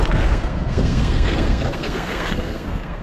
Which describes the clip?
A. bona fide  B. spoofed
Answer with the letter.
B